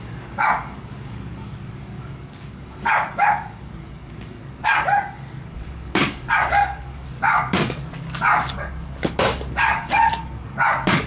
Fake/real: fake